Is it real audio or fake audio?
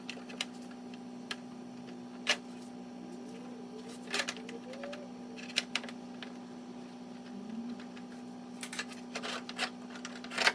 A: real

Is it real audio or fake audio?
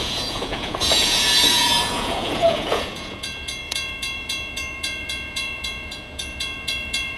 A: fake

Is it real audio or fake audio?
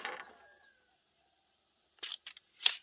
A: real